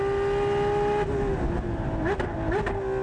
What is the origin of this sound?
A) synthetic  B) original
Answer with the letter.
B